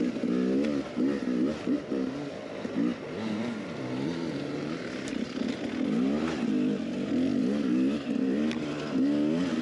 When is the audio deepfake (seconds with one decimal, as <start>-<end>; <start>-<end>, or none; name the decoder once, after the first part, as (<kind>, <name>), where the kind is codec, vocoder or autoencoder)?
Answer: 1.5-5.6 (vocoder, BigVGAN v2); 7.3-8.2